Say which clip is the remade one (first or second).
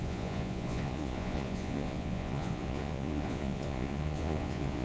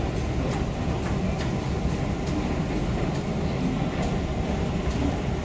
first